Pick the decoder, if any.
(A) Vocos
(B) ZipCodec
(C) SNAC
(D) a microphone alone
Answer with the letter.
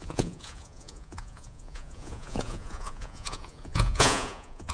A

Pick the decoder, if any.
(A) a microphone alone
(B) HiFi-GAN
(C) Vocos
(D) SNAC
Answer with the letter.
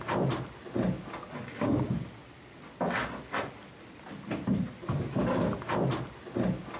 A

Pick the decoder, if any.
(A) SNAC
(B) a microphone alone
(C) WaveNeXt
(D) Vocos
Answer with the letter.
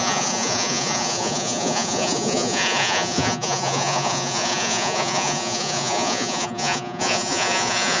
D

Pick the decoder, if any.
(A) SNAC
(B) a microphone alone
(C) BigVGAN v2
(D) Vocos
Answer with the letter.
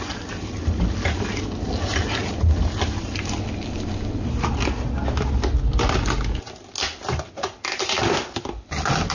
B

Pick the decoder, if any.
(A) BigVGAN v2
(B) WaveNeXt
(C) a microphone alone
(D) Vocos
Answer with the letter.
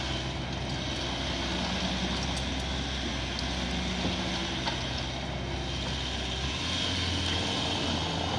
C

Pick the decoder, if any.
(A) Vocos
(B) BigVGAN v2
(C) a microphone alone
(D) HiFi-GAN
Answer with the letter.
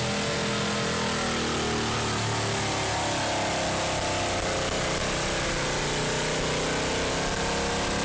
C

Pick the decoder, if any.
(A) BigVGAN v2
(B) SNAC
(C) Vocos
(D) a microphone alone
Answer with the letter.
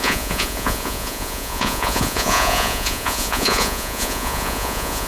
C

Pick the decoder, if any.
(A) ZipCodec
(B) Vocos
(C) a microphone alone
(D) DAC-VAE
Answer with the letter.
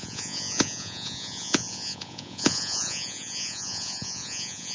B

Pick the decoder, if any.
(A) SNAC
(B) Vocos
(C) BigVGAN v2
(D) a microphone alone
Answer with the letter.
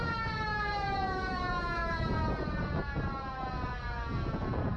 B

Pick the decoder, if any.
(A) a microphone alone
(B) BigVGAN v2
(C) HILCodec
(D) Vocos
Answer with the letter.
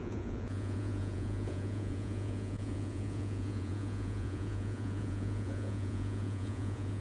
D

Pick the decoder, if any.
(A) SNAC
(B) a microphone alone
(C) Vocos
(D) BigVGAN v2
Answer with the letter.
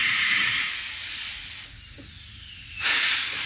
C